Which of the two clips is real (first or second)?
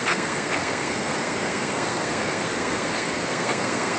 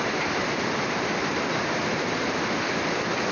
second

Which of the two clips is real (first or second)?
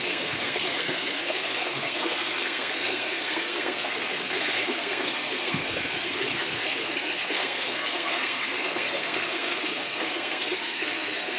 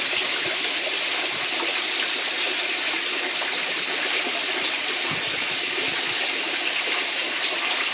second